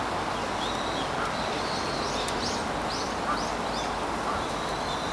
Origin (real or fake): real